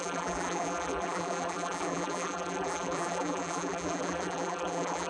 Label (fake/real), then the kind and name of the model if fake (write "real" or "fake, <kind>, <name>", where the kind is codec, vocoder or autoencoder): fake, vocoder, BigVGAN v2